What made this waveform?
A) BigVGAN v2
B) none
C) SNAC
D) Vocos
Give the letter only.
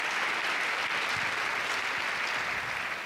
B